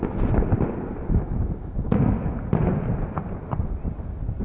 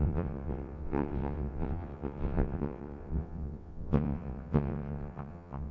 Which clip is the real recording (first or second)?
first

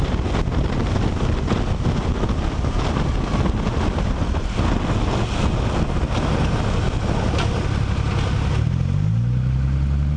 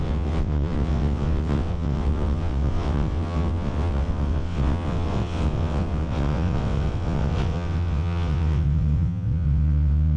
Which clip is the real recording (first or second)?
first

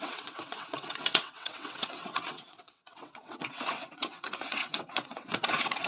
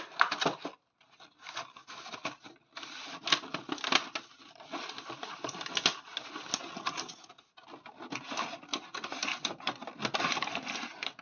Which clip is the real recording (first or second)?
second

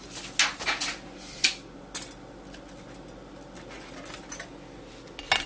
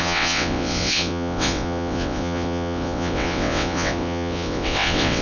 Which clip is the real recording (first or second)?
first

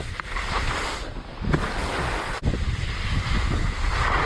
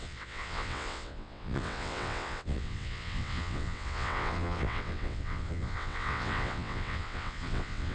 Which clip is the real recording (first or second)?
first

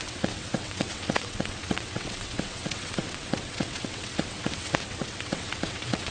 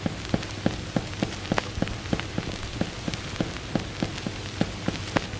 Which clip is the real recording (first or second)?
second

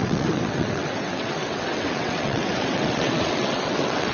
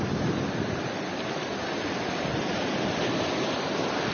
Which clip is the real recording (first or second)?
second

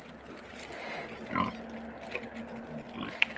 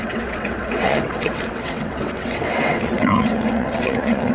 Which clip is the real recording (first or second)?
first